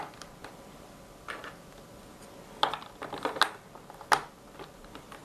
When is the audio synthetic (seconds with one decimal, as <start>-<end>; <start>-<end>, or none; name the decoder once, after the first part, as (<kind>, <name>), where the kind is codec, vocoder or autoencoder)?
none